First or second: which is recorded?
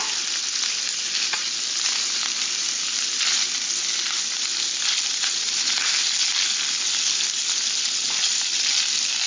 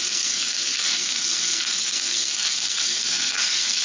first